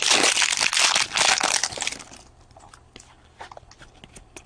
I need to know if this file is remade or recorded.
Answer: recorded